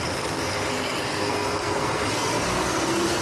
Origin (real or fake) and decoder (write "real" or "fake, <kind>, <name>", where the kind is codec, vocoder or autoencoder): fake, codec, SNAC